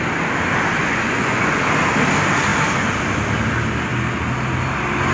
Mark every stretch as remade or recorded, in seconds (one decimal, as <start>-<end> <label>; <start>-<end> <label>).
0.0-0.8 recorded; 0.8-1.6 remade; 1.6-5.1 recorded